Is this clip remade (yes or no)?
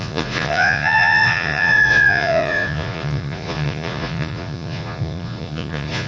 yes